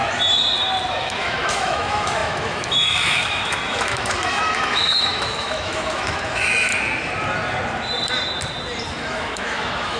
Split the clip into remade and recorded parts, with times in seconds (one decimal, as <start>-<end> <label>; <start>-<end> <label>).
0.0-1.0 recorded; 1.0-6.7 remade; 6.7-8.9 recorded; 8.9-10.0 remade